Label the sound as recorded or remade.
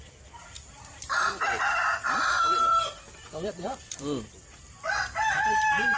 remade